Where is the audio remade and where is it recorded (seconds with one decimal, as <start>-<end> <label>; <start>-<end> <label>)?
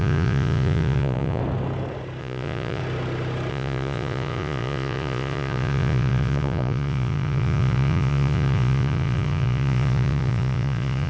0.0-1.4 remade; 1.4-2.2 recorded; 2.2-2.8 remade; 2.8-3.5 recorded; 3.5-11.1 remade